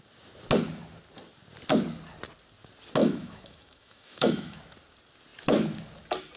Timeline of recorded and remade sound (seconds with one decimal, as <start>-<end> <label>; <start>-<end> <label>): 0.0-3.0 recorded; 3.0-4.6 remade; 4.6-6.4 recorded